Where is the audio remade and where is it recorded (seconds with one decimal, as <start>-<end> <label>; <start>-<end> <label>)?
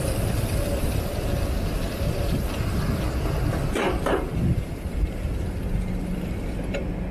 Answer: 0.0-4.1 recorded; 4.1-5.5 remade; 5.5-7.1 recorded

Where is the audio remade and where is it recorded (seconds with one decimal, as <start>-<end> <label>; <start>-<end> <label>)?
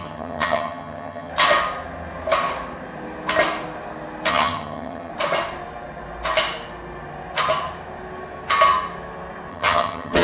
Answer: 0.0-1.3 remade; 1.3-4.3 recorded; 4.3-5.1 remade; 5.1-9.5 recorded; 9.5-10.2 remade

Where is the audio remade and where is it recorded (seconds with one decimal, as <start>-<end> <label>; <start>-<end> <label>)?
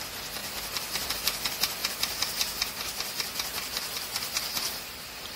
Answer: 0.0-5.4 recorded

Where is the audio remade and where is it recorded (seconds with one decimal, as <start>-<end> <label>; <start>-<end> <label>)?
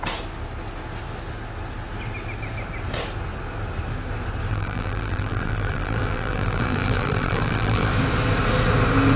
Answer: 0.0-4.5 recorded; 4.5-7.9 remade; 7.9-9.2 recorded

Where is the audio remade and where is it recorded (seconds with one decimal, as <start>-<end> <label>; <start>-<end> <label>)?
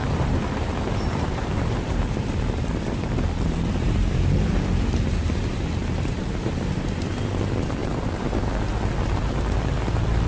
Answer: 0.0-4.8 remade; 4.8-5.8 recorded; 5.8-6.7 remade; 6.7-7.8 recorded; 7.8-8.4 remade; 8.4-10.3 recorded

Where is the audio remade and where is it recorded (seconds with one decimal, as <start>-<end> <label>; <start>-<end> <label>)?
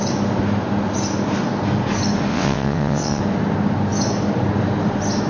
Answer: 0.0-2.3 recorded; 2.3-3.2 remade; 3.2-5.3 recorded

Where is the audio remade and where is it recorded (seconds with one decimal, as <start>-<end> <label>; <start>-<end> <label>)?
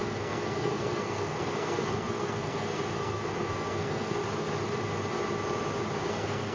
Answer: 0.0-4.2 remade; 4.2-6.1 recorded; 6.1-6.5 remade